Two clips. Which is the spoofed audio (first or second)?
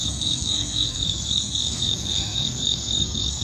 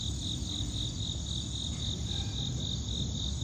first